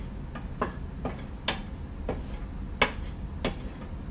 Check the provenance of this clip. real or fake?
real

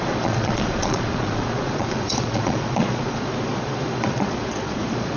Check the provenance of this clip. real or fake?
fake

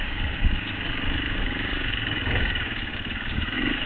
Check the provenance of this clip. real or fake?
fake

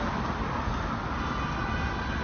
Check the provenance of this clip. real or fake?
real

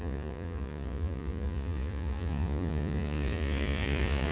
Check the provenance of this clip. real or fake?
fake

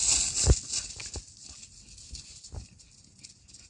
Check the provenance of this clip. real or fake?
real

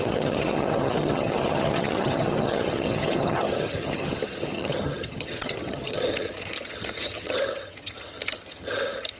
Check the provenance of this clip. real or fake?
fake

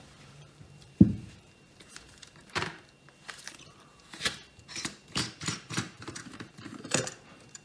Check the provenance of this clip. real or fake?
fake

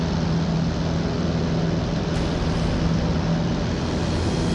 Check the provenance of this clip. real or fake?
real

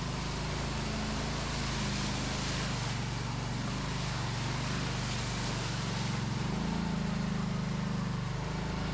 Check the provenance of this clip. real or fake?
real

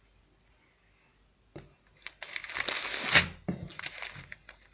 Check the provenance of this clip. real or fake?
real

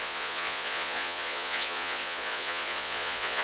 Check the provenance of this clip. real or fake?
fake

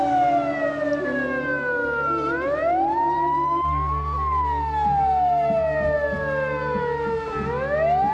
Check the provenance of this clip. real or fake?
real